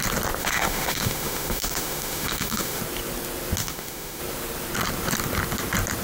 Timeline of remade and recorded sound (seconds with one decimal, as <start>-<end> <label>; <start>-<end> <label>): 0.0-0.4 recorded; 0.4-2.8 remade; 2.8-3.6 recorded; 3.6-4.2 remade; 4.2-6.0 recorded